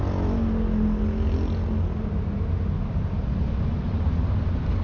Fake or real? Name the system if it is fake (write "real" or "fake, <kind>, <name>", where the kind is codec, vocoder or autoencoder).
real